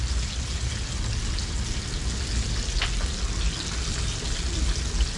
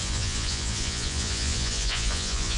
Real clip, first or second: first